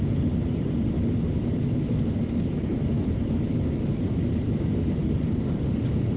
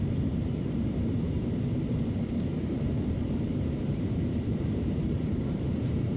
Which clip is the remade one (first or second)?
second